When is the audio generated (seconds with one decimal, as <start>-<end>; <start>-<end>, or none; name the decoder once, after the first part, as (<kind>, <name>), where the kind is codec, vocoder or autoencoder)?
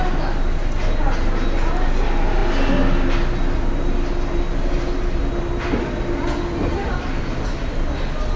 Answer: none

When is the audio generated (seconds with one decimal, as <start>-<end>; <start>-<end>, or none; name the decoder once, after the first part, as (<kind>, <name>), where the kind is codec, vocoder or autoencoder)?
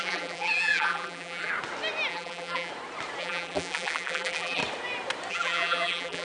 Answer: 0.0-1.5 (vocoder, BigVGAN v2); 2.1-2.7; 3.2-4.6; 5.3-6.2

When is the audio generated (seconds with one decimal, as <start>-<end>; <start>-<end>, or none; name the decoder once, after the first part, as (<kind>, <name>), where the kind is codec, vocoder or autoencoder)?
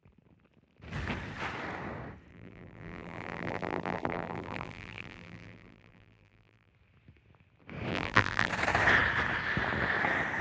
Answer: 2.3-6.7 (vocoder, BigVGAN v2); 7.9-8.5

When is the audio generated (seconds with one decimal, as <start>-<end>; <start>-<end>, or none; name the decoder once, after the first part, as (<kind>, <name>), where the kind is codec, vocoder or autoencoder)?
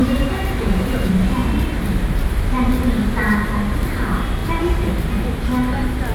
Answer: 0.0-0.5 (vocoder, BigVGAN v2); 1.4-2.8; 4.4-5.1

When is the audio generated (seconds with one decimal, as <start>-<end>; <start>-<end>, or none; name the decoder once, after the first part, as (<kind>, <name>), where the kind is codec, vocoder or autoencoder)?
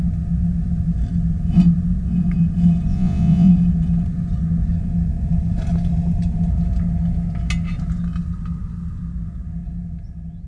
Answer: 2.9-3.5 (vocoder, Vocos)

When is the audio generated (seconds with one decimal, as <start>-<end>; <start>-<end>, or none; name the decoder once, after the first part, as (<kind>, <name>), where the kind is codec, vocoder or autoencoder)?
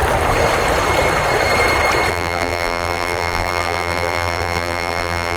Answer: 2.1-5.4 (vocoder, BigVGAN v2)